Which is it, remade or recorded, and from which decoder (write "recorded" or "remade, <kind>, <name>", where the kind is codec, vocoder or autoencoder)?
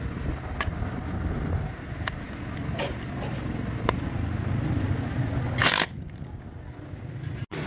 recorded